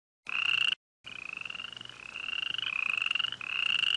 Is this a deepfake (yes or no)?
no